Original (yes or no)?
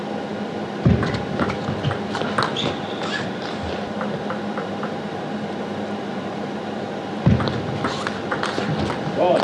yes